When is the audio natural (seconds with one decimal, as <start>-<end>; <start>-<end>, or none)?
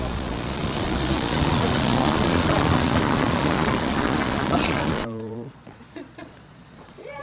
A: none